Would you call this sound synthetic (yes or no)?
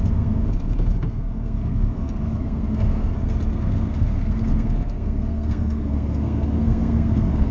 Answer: yes